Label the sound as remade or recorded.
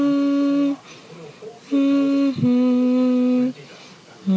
recorded